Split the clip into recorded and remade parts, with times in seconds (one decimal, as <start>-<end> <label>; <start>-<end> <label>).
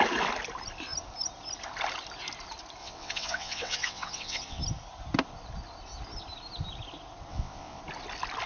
0.0-2.8 recorded; 2.8-4.6 remade; 4.6-7.3 recorded; 7.3-7.8 remade; 7.8-8.5 recorded